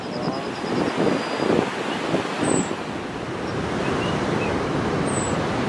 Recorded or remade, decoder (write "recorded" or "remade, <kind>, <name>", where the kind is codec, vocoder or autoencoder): recorded